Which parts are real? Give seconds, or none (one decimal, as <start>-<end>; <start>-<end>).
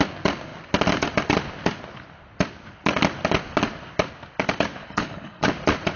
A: 0.0-4.8; 5.5-6.0